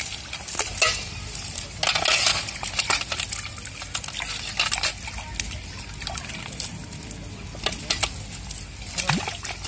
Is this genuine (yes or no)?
yes